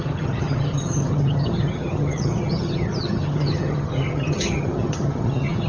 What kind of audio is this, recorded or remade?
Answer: remade